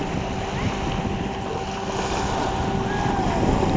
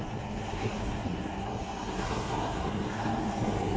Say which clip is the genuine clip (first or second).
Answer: first